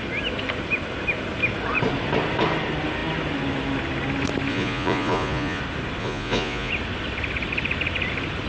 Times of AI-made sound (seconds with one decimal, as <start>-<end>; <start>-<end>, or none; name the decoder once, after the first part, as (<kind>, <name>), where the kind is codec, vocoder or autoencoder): 4.5-5.6 (vocoder, Vocos); 6.0-6.7